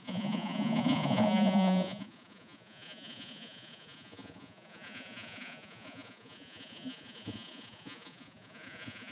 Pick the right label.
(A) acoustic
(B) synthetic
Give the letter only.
B